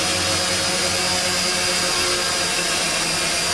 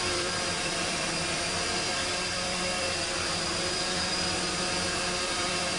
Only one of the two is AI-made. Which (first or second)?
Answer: second